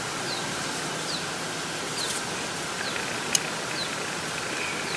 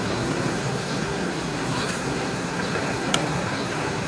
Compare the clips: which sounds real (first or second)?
first